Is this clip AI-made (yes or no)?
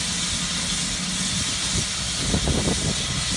no